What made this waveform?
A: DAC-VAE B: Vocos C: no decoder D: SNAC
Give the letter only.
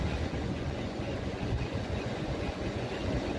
B